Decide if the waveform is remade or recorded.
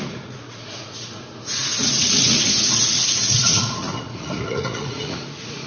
remade